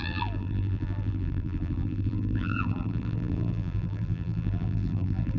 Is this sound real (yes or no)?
no